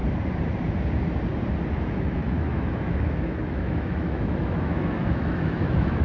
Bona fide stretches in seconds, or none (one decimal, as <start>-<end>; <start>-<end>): 0.0-1.7

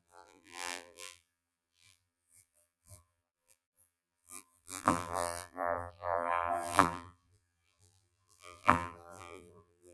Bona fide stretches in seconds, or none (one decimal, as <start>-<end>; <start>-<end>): none